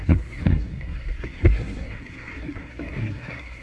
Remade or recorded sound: remade